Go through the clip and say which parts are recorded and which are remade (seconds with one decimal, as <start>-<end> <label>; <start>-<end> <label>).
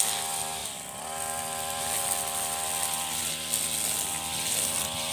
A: 0.0-5.1 recorded